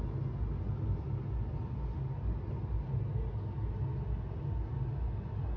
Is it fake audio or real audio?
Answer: real